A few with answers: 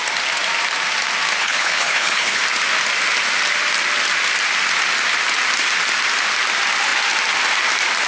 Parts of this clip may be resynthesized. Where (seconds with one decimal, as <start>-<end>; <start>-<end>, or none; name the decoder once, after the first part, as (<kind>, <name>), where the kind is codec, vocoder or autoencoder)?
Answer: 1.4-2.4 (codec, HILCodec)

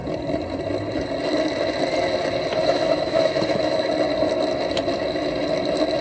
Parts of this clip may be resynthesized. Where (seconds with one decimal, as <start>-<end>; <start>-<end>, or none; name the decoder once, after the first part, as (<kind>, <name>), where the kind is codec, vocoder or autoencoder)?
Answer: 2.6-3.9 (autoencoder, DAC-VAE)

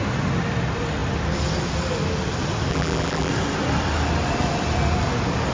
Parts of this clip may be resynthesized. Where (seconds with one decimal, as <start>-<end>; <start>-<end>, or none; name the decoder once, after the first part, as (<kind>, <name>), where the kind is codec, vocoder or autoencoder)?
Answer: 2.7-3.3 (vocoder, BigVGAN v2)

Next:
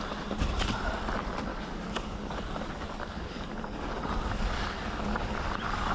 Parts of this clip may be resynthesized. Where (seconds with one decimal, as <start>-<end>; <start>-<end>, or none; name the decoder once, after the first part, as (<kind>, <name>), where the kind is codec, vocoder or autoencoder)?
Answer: 1.5-4.0 (codec, DAC)

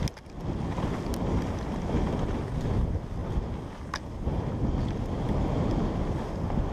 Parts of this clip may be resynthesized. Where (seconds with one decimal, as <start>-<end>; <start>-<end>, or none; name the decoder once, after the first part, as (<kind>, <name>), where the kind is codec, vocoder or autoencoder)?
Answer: none